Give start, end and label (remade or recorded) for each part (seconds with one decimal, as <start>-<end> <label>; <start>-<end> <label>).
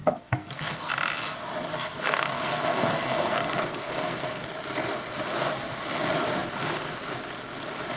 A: 0.0-0.9 remade; 0.9-1.7 recorded; 1.7-4.5 remade; 4.5-8.0 recorded